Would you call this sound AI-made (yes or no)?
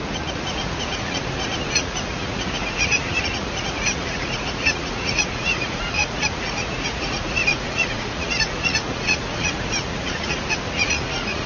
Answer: yes